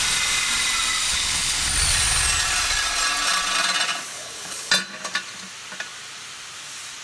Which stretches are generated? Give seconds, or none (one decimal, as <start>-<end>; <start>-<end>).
1.1-1.6; 4.1-4.7